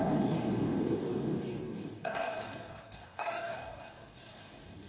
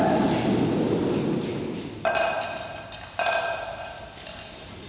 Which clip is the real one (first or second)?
second